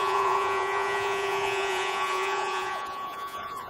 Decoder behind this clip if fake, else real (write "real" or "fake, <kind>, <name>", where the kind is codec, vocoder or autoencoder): fake, vocoder, Vocos